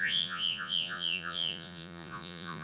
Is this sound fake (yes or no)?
yes